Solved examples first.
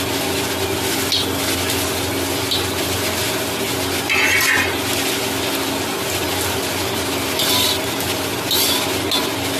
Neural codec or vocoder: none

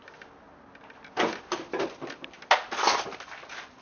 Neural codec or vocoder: none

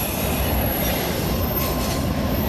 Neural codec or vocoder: none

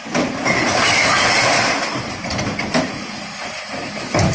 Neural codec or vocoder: none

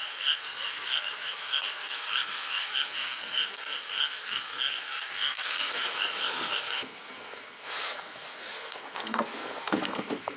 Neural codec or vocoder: codec, SNAC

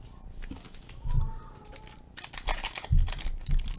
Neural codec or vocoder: none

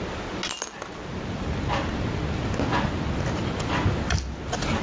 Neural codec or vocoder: none